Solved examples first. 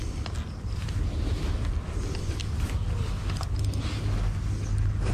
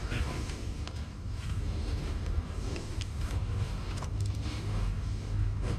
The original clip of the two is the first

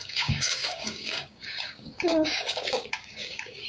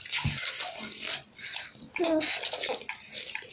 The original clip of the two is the second